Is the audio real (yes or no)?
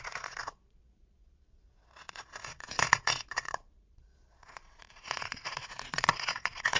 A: no